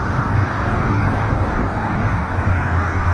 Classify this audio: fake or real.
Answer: fake